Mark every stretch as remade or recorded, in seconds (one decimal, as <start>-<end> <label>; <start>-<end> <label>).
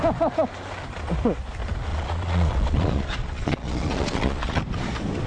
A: 0.0-1.9 recorded; 1.9-4.6 remade; 4.6-5.3 recorded